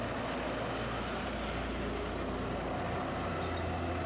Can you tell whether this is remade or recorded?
recorded